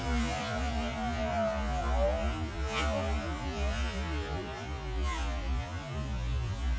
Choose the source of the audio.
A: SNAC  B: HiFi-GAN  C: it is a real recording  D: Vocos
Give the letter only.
C